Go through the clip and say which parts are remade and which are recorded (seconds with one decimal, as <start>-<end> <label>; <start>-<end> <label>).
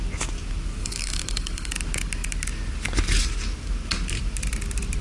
0.0-0.8 recorded; 0.8-1.7 remade; 1.7-5.0 recorded